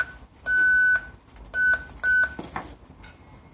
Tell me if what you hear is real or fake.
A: real